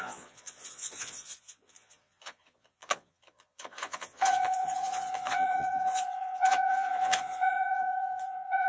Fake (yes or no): yes